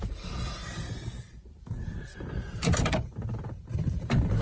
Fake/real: fake